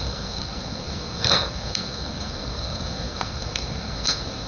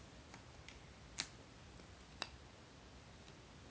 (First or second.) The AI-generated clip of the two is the first